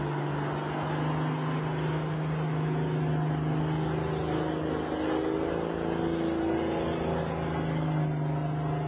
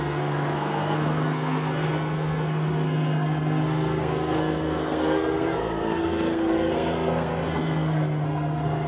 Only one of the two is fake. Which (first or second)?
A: second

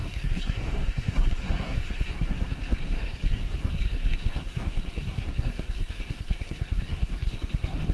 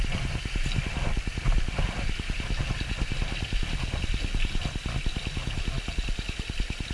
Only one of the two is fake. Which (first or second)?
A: first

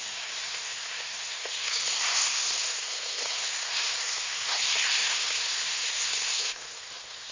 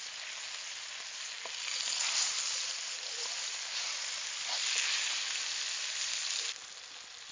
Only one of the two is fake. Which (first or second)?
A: first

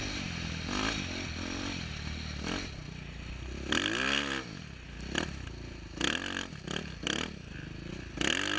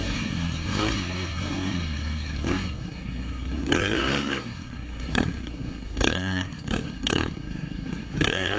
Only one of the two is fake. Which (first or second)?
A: second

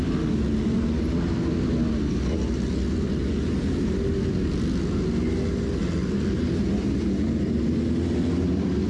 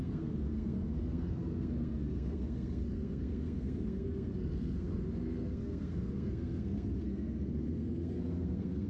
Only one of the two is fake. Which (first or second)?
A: second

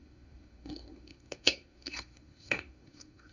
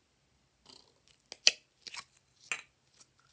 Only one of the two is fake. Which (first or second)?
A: first